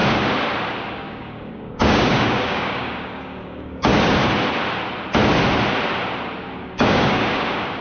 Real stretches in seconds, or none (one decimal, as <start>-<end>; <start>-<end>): 0.0-0.9; 3.9-6.6